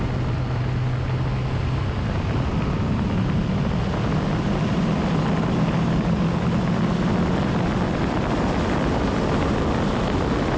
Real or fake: real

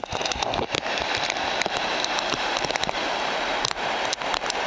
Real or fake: fake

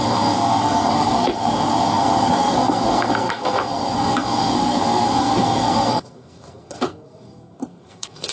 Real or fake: fake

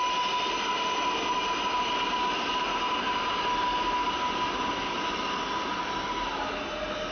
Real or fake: real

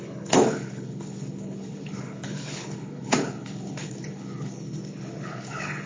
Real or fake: fake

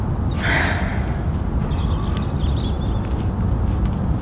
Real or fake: real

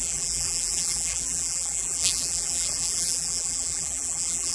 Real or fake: fake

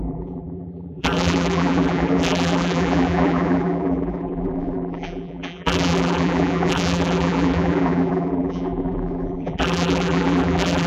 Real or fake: fake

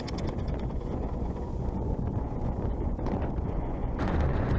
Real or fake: fake